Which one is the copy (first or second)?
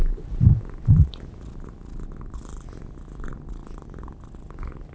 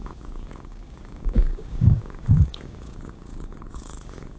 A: second